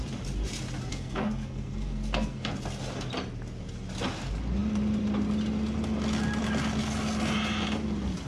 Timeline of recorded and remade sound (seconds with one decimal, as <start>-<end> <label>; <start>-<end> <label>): 0.0-0.9 recorded; 0.9-2.5 remade; 2.5-8.3 recorded

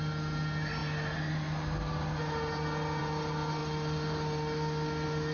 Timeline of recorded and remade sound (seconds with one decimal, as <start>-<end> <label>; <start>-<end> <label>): 0.0-5.3 recorded

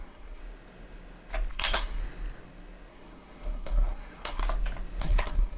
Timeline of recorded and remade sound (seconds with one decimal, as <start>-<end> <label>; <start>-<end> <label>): 0.0-0.4 remade; 0.4-1.5 recorded; 1.5-2.0 remade; 2.0-2.9 recorded; 2.9-4.4 remade; 4.4-5.0 recorded; 5.0-5.6 remade

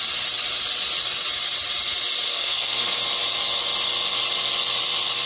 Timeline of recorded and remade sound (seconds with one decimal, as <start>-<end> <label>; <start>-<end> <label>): 0.0-2.3 recorded; 2.3-3.0 remade; 3.0-5.3 recorded

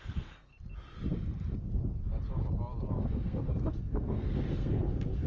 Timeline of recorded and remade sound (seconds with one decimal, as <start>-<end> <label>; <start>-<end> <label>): 0.0-0.5 remade; 0.5-3.0 recorded; 3.0-5.3 remade